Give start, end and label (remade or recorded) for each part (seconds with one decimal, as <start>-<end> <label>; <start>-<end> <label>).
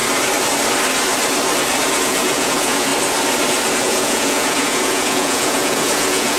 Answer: 0.0-2.0 recorded; 2.0-2.9 remade; 2.9-3.8 recorded; 3.8-6.4 remade